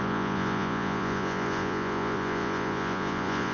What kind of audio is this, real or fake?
fake